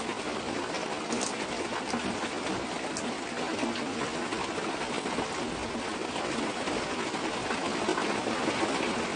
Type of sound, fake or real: real